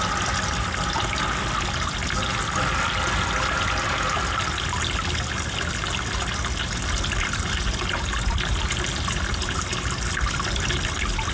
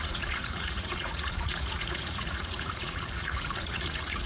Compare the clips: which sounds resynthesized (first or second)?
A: second